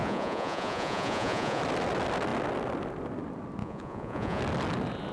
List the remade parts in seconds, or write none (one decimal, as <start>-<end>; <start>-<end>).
0.0-1.6; 3.6-4.4